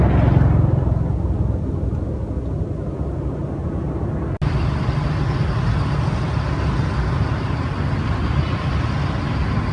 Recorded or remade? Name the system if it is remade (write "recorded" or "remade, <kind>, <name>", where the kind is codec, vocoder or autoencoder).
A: recorded